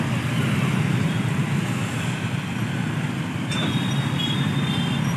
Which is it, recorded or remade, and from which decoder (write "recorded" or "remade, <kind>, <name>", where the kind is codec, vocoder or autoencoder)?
recorded